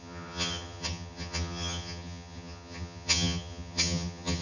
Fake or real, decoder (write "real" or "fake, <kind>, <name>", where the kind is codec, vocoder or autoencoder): fake, vocoder, HiFi-GAN